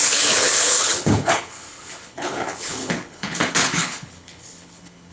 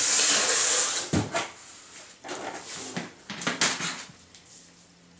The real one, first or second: second